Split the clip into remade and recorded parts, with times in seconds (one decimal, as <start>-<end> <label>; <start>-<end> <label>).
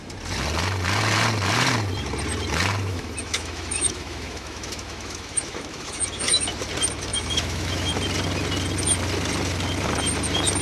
0.0-2.9 recorded; 2.9-6.6 remade; 6.6-7.1 recorded; 7.1-7.9 remade; 7.9-10.6 recorded